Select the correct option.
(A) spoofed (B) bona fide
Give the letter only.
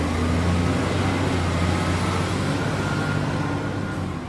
B